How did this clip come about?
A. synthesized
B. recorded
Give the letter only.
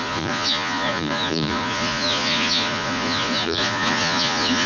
A